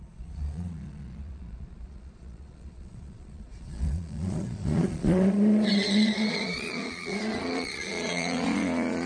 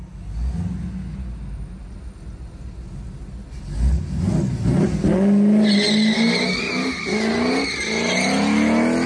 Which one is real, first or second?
second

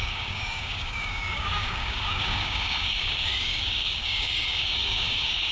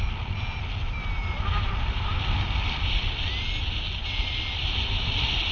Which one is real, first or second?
second